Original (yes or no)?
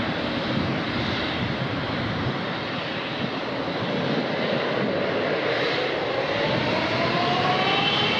no